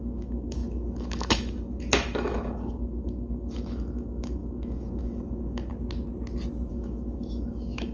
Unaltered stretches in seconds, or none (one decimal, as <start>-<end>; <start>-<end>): 5.7-6.7